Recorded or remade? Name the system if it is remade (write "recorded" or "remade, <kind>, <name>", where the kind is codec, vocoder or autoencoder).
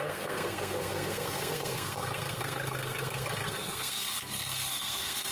remade, codec, SNAC